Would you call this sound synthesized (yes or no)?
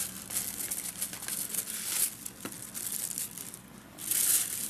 no